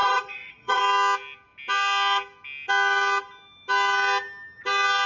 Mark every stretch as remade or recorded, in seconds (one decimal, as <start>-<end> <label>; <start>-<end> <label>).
0.0-0.8 remade; 0.8-5.1 recorded

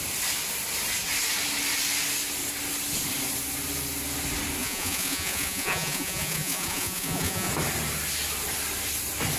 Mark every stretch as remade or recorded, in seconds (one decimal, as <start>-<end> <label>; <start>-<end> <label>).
0.0-4.6 recorded; 4.6-7.5 remade; 7.5-9.4 recorded